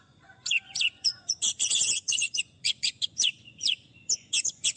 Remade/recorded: remade